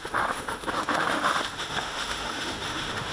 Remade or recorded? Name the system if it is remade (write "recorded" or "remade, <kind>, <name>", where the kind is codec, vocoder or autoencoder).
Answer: remade, autoencoder, DAC-VAE